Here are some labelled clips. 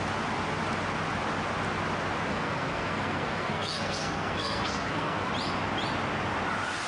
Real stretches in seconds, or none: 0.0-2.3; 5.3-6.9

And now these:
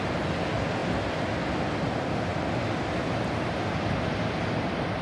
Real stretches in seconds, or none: 0.0-5.0

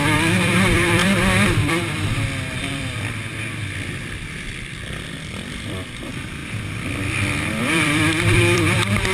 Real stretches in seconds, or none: none

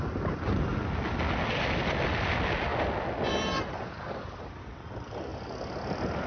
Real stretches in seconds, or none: 0.0-6.3

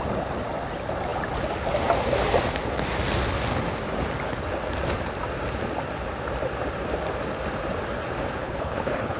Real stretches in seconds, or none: 0.0-8.4

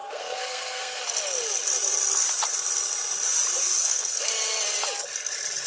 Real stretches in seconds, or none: 1.0-3.6; 4.3-5.7